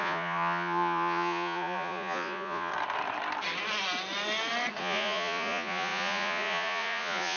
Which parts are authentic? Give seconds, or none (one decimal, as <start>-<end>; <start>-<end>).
2.7-4.8